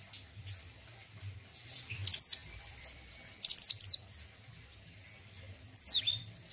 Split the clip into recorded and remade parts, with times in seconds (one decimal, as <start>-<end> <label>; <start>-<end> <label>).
0.0-6.5 recorded